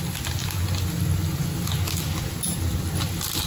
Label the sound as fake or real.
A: real